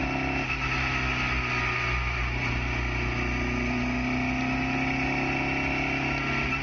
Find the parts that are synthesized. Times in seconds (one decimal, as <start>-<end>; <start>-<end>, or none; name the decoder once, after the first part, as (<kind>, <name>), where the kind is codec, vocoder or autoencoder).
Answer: none